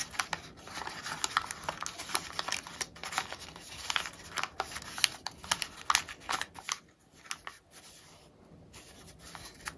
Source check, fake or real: real